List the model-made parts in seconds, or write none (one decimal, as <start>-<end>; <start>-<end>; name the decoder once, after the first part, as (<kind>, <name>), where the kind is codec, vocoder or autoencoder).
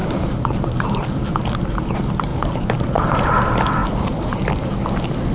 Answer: 0.0-1.4 (vocoder, BigVGAN v2); 2.3-3.3; 3.8-4.4